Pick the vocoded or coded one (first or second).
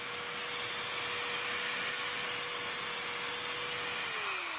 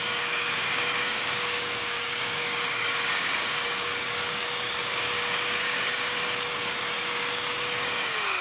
second